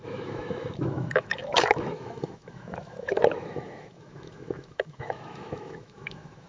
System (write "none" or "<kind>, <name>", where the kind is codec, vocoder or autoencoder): autoencoder, DAC-VAE